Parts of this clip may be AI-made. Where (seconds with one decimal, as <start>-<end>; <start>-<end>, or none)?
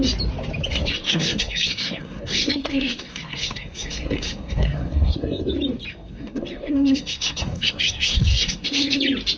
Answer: 0.7-5.5; 5.9-9.0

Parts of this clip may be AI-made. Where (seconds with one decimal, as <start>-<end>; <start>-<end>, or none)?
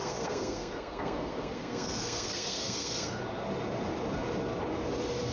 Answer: 0.0-3.2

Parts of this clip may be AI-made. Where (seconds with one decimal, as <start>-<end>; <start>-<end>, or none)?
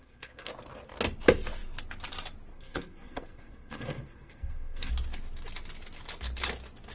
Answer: 0.0-0.5; 2.5-4.9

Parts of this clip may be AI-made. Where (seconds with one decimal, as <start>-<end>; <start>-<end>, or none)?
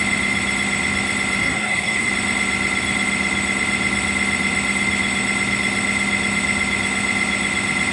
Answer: 1.4-2.1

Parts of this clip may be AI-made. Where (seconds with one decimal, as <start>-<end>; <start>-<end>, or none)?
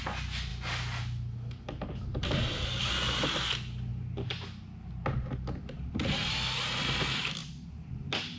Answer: none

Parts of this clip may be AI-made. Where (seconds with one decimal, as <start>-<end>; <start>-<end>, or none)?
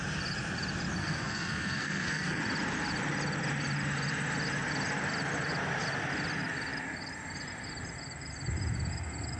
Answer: 1.0-2.4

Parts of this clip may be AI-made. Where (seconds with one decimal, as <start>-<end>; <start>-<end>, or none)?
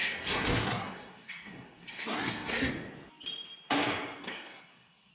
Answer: 0.0-2.7; 4.2-5.1